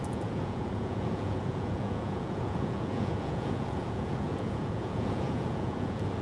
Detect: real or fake fake